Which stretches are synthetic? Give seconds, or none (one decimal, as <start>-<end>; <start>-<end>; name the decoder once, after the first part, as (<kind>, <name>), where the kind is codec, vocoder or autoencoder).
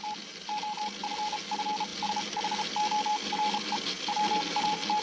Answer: none